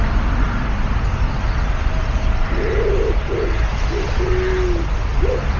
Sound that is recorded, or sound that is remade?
recorded